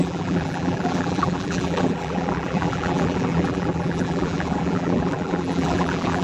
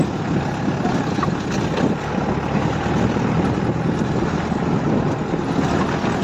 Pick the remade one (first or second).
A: first